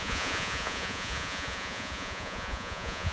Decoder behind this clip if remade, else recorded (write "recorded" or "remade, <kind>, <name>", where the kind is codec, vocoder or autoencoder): remade, vocoder, Vocos